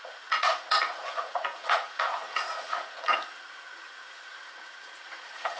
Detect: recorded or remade remade